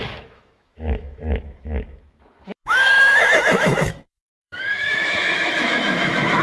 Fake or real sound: fake